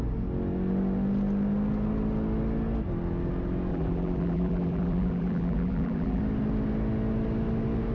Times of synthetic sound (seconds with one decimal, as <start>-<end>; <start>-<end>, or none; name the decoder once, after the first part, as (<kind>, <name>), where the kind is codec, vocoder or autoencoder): 3.7-6.2 (vocoder, BigVGAN v2)